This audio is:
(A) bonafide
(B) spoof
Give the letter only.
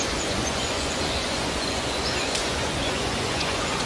B